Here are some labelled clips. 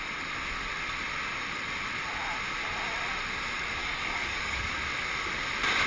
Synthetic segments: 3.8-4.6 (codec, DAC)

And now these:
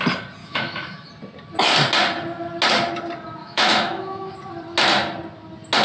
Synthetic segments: 0.4-1.1 (autoencoder, DAC-VAE); 3.4-4.3

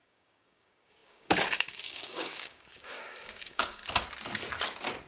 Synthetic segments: 0.0-3.8 (codec, DAC)

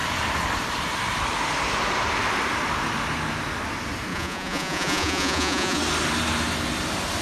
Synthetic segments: 4.1-5.8 (vocoder, Vocos)

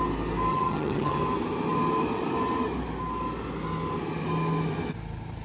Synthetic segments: 0.5-1.2 (vocoder, HiFi-GAN)